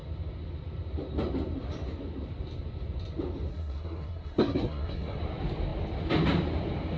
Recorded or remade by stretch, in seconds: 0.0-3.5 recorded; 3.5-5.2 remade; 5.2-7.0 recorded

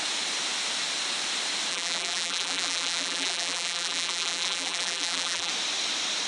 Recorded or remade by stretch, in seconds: 0.0-1.7 recorded; 1.7-5.5 remade; 5.5-6.3 recorded

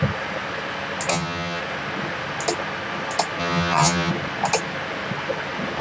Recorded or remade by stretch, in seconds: 0.0-1.1 recorded; 1.1-1.6 remade; 1.6-3.4 recorded; 3.4-4.1 remade; 4.1-5.8 recorded

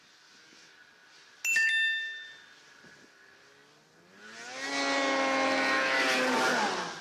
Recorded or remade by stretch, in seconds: 0.0-7.0 recorded